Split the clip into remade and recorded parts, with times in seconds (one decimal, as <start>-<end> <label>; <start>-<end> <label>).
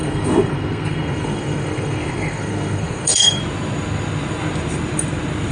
0.0-3.4 remade; 3.4-5.5 recorded